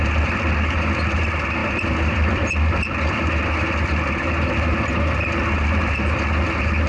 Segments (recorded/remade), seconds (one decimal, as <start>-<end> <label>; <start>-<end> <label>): 0.0-1.6 recorded; 1.6-3.2 remade; 3.2-6.9 recorded

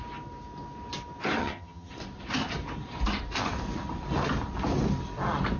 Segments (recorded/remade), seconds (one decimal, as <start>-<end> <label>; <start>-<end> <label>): 0.0-1.4 recorded; 1.4-1.9 remade; 1.9-5.6 recorded

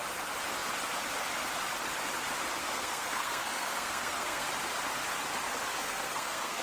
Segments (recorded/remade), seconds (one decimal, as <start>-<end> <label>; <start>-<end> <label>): 0.0-2.6 recorded; 2.6-4.5 remade; 4.5-5.8 recorded; 5.8-6.6 remade

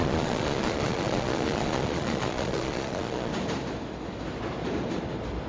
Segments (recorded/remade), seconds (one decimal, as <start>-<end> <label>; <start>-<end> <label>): 0.0-3.3 remade; 3.3-5.5 recorded

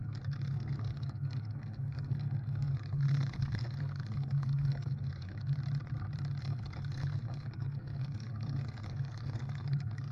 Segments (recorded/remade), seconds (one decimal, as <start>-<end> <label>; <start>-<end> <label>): 0.0-5.6 remade; 5.6-6.4 recorded; 6.4-10.1 remade

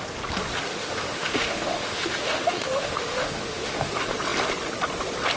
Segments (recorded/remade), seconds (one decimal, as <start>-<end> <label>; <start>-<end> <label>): 0.0-0.7 recorded; 0.7-3.9 remade; 3.9-5.4 recorded